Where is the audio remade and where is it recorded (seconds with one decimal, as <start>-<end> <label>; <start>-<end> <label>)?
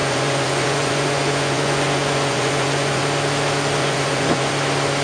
0.0-3.0 remade; 3.0-3.8 recorded; 3.8-4.5 remade; 4.5-5.0 recorded